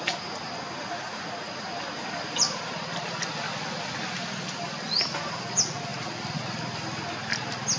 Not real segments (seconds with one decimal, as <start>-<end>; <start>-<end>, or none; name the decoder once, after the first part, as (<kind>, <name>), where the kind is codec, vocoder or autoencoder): none